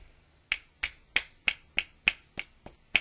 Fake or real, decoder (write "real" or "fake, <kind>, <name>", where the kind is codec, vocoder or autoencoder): real